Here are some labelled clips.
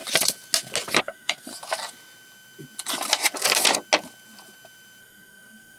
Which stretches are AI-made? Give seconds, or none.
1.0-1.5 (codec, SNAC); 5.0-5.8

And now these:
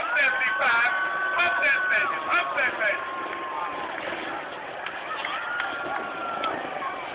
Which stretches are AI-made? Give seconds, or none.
none

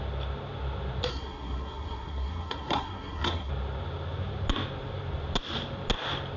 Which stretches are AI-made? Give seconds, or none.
1.1-3.5 (codec, SNAC)

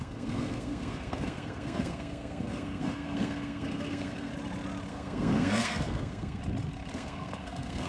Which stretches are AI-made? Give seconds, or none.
0.0-4.3 (codec, SNAC); 4.9-6.4; 6.9-7.9

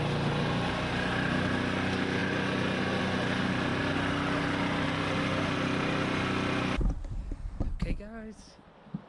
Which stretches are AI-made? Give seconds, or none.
none

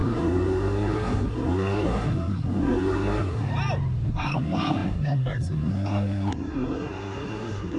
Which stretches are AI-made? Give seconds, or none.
0.0-3.5 (codec, SNAC); 4.1-7.8

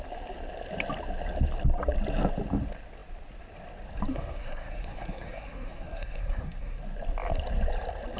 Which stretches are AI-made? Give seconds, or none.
4.1-6.8 (codec, SNAC)